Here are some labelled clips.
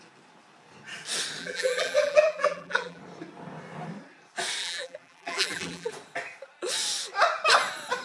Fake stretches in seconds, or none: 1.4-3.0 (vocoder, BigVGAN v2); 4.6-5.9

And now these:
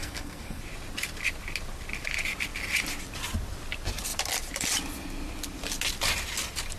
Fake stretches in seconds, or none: 0.0-0.6 (codec, SNAC)

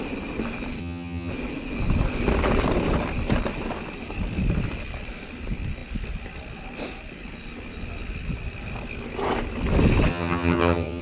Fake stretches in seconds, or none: 0.8-1.3 (vocoder, HiFi-GAN); 10.1-11.0

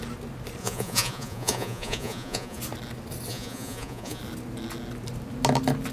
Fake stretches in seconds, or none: 0.6-2.6 (vocoder, Vocos); 3.3-4.2

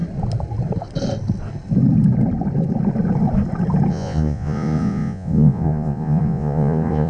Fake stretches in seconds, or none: 3.9-7.1 (vocoder, Vocos)